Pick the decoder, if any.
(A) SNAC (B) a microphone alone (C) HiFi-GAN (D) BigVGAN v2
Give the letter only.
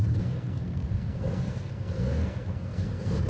A